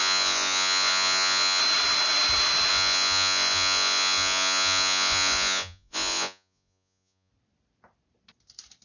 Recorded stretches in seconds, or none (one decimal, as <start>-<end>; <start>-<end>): 1.6-2.7; 7.3-8.8